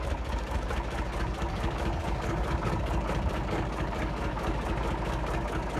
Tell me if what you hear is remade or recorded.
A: remade